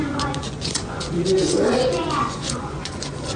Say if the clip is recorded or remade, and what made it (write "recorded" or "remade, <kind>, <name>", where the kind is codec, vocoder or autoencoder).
remade, vocoder, Vocos